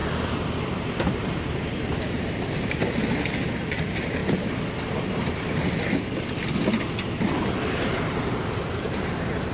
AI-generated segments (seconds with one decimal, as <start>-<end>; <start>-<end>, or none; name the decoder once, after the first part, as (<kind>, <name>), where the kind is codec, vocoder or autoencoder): 0.6-4.2 (vocoder, BigVGAN v2); 7.1-9.5